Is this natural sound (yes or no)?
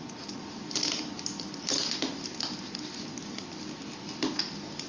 yes